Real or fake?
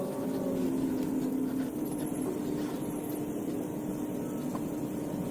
real